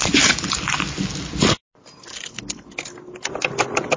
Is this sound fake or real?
real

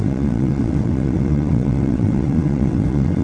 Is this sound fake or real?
fake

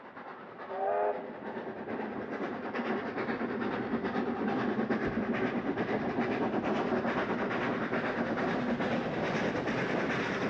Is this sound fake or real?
real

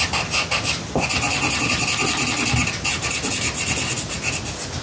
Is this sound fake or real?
real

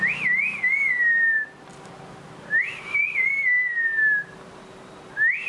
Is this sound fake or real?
real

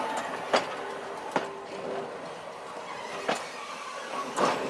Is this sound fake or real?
real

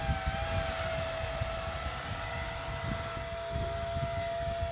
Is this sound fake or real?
real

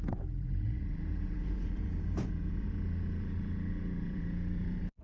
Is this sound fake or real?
fake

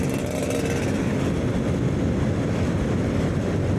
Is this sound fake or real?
real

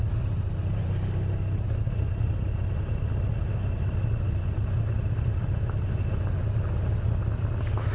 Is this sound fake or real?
real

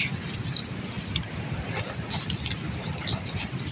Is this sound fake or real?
real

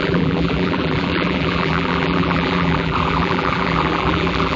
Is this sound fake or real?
fake